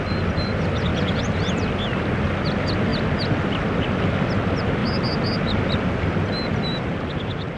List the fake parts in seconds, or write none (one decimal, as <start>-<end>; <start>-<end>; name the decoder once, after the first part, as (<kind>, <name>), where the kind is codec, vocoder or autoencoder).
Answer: none